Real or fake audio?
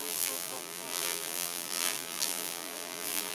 fake